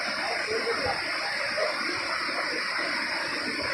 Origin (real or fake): real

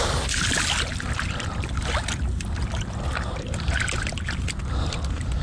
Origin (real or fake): real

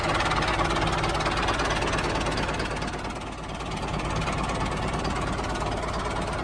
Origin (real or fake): real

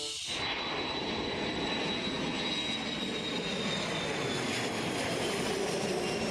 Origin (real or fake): real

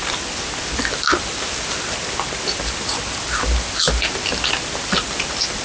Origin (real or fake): real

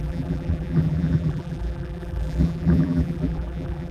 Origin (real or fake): fake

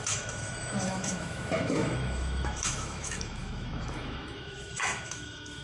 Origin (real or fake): fake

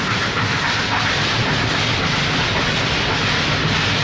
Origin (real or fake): real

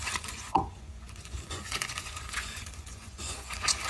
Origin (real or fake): fake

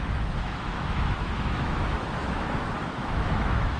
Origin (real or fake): fake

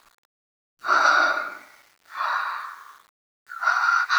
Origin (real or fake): real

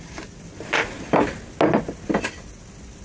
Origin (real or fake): real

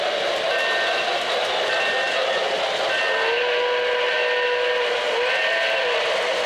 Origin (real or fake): real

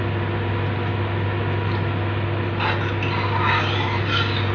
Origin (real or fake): real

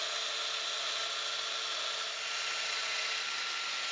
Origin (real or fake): real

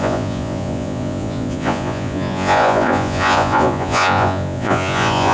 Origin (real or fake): fake